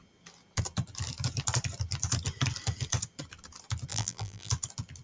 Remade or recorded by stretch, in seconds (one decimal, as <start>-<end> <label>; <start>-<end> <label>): 0.0-3.9 recorded; 3.9-4.5 remade; 4.5-5.0 recorded